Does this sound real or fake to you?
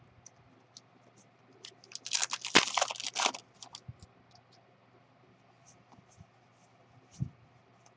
real